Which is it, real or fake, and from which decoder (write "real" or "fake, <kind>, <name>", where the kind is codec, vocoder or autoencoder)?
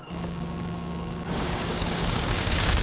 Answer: fake, codec, DAC